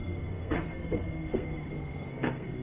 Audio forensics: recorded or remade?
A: remade